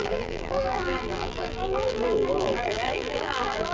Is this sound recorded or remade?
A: remade